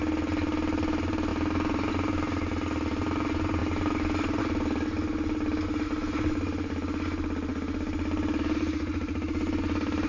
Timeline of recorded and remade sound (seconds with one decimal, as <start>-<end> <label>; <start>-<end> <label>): 0.0-10.1 recorded